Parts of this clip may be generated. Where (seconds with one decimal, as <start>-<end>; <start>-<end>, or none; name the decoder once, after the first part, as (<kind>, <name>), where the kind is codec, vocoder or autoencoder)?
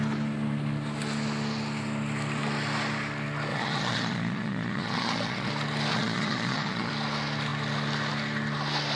3.5-5.5 (vocoder, Vocos); 5.9-6.9